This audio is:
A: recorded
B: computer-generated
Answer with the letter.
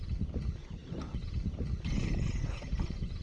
A